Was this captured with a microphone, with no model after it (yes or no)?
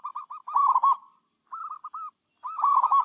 yes